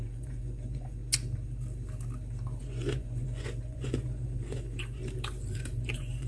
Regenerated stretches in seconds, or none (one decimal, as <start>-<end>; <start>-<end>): 0.0-1.0; 2.6-5.0; 5.7-6.3